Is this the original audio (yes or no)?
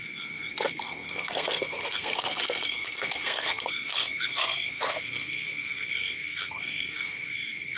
no